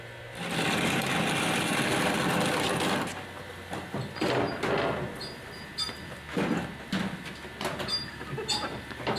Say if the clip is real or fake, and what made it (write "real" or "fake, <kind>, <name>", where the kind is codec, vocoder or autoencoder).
real